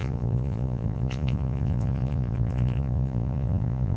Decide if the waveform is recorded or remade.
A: remade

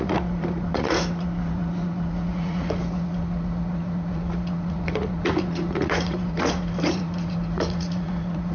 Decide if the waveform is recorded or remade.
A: remade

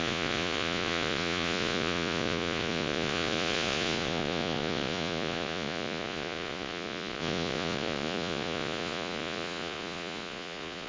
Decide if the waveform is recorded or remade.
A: remade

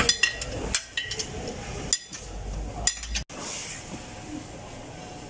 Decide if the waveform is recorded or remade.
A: recorded